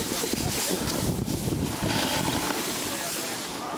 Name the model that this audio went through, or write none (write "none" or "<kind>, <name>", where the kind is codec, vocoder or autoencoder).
none